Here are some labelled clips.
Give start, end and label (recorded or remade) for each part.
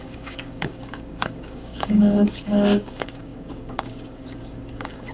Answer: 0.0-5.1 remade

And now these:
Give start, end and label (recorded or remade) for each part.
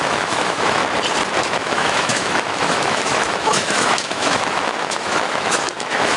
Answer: 0.0-0.8 remade; 0.8-1.4 recorded; 1.4-6.2 remade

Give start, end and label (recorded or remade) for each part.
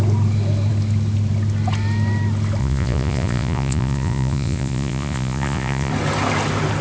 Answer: 0.0-2.6 recorded; 2.6-5.9 remade; 5.9-6.8 recorded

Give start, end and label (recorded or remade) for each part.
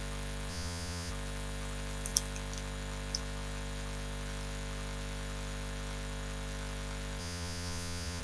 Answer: 0.0-0.5 recorded; 0.5-1.1 remade; 1.1-7.2 recorded; 7.2-8.2 remade